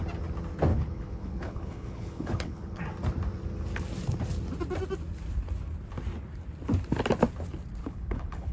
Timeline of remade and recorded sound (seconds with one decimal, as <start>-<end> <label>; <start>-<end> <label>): 0.0-0.7 recorded; 0.7-2.8 remade; 2.8-7.8 recorded; 7.8-8.5 remade